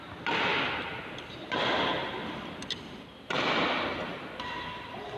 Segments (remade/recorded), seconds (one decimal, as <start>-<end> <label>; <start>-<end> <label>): 0.0-5.2 recorded